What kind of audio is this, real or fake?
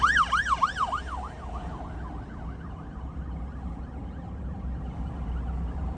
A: real